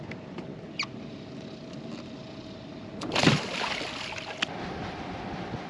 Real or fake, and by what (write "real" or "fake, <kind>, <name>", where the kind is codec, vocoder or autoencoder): real